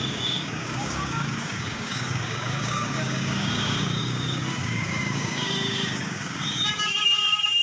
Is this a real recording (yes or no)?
no